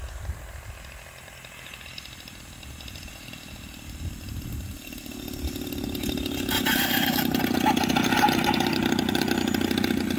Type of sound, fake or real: real